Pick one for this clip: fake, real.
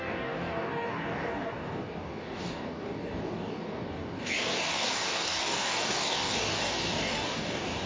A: fake